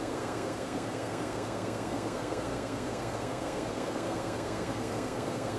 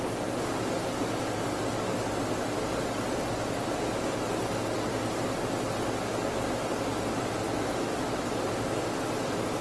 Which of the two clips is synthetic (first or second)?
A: first